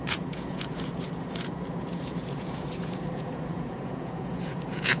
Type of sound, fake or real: fake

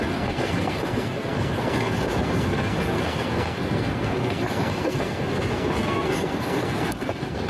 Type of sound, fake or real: fake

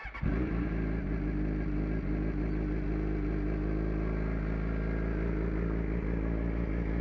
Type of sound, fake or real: real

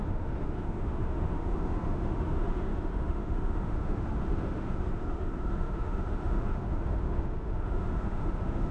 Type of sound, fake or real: fake